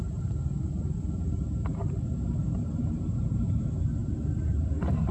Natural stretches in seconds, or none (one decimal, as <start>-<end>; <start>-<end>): 0.0-1.7; 3.6-4.0